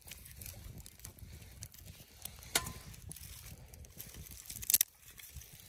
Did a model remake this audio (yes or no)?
no